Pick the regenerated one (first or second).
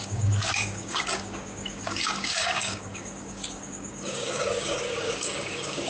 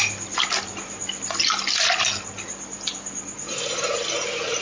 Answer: first